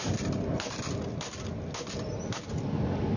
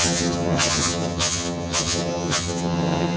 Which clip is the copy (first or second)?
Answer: second